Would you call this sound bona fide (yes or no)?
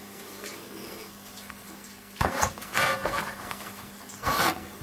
no